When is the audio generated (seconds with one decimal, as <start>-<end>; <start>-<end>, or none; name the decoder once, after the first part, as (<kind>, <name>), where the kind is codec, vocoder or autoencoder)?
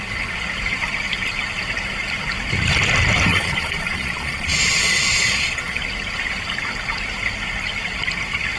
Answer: 3.3-5.8 (vocoder, Vocos)